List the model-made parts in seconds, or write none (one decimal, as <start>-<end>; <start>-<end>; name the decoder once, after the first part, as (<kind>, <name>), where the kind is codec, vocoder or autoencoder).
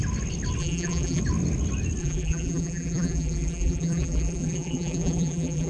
0.6-1.2 (vocoder, BigVGAN v2); 2.0-5.7